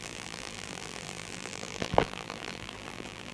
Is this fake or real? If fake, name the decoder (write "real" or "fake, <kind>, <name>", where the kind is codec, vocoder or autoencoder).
fake, vocoder, BigVGAN v2